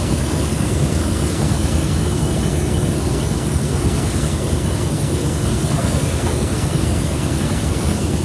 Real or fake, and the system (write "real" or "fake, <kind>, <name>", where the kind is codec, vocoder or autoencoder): fake, codec, SNAC